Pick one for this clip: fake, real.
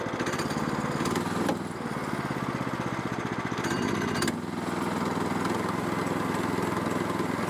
real